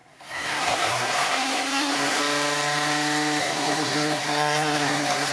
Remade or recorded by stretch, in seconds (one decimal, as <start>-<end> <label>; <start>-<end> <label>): 0.0-2.2 remade; 2.2-3.4 recorded; 3.4-5.3 remade